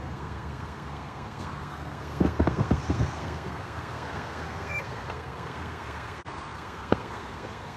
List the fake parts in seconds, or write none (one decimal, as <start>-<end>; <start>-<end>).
0.0-7.8